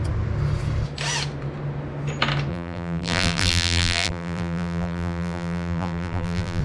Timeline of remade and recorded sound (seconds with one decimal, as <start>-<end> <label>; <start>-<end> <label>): 0.0-2.5 recorded; 2.5-6.6 remade